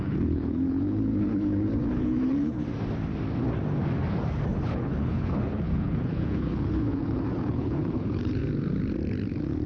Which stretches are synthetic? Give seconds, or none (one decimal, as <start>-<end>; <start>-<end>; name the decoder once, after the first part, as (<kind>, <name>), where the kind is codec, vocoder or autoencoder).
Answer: 0.0-2.6 (codec, HILCodec); 4.6-8.4